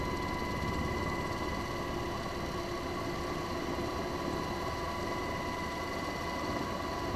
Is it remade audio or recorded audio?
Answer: recorded